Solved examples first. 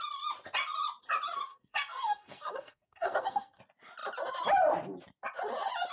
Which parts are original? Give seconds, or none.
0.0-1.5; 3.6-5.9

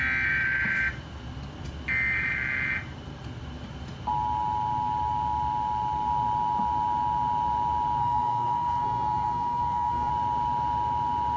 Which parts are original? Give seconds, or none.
0.0-8.0; 10.1-11.4